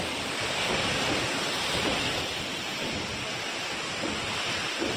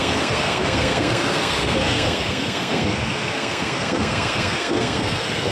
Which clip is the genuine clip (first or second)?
first